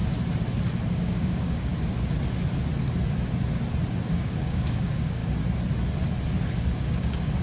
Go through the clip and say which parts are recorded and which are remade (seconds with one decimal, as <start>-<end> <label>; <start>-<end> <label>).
0.0-0.9 recorded; 0.9-1.7 remade; 1.7-4.1 recorded; 4.1-5.2 remade; 5.2-6.8 recorded; 6.8-7.4 remade